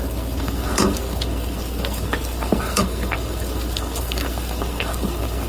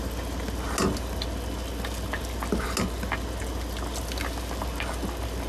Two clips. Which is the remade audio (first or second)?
first